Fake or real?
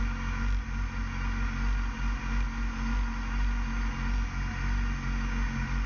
real